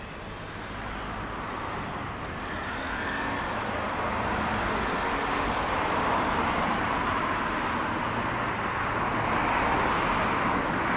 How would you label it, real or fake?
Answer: real